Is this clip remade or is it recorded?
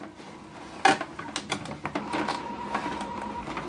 recorded